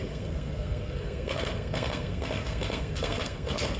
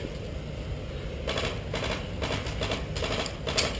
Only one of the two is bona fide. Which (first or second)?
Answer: second